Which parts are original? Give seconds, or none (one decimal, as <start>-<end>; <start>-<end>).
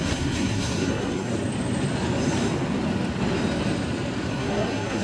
1.3-4.3